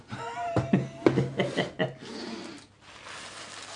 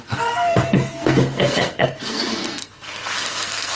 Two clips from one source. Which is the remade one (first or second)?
second